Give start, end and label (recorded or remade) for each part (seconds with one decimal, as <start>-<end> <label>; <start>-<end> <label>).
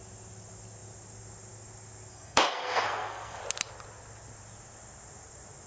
0.0-2.1 recorded; 2.1-3.4 remade; 3.4-5.7 recorded